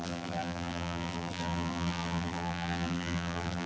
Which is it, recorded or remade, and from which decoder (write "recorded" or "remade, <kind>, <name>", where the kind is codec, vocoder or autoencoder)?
remade, vocoder, BigVGAN v2